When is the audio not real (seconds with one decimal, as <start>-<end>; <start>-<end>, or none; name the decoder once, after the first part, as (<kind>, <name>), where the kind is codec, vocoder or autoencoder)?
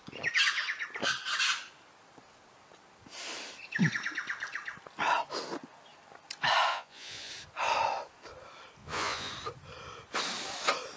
6.7-7.3 (vocoder, Vocos); 8.8-9.3